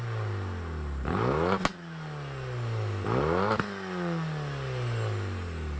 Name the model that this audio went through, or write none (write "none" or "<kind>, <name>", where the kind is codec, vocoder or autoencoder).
none